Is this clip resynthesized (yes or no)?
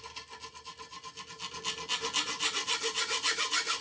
no